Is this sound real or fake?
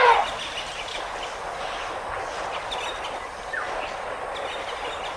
real